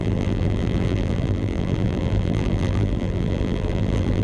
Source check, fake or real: fake